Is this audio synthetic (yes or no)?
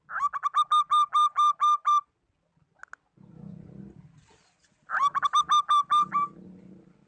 no